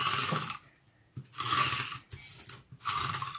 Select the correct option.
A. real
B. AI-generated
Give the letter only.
A